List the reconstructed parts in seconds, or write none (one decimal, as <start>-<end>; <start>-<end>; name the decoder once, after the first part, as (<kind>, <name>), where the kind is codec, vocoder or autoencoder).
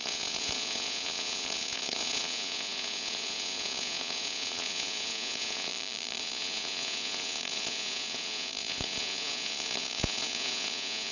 0.0-5.7 (vocoder, Vocos); 6.2-11.1